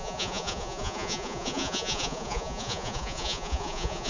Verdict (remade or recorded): remade